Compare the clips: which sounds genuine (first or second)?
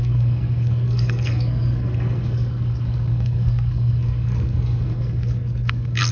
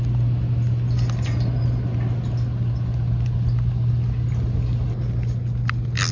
second